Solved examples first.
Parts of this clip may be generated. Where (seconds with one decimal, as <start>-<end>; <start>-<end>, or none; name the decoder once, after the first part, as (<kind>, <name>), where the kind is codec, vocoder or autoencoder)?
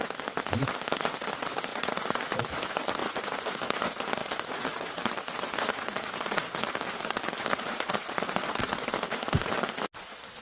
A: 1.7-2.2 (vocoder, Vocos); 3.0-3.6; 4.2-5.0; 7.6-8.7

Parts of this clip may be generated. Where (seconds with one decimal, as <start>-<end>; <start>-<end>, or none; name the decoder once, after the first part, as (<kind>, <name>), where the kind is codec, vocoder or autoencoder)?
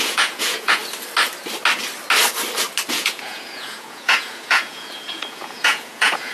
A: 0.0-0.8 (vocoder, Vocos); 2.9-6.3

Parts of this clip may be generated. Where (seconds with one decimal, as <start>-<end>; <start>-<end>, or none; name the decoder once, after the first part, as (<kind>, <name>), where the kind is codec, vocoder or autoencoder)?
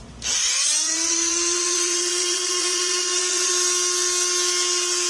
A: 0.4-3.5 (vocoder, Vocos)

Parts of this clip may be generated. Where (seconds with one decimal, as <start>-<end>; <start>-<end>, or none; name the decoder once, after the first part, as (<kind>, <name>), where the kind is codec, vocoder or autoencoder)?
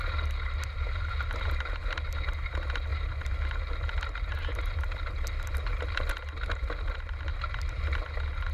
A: none